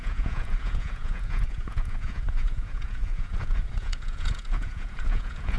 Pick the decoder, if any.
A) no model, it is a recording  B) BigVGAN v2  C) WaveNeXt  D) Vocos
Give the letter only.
D